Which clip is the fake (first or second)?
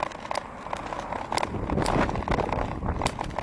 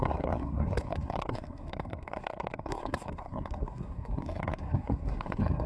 second